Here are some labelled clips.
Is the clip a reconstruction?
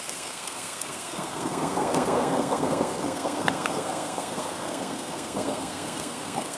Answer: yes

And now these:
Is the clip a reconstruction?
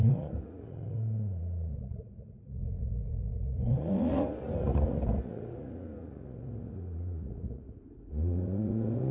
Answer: yes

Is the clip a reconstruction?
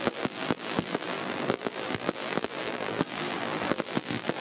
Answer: yes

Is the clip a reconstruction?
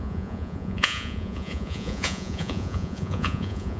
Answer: yes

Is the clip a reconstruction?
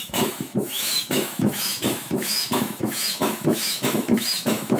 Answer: yes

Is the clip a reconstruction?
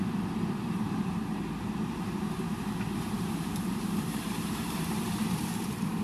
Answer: yes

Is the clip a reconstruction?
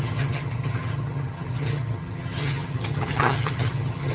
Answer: yes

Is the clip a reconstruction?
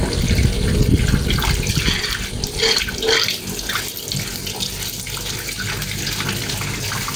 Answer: no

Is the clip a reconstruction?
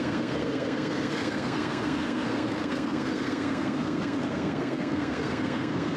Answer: yes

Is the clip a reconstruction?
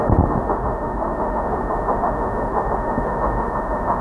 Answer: yes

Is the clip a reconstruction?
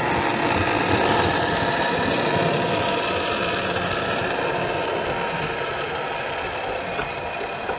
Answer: no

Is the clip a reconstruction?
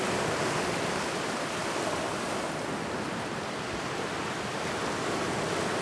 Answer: no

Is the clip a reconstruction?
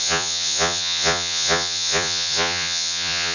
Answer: yes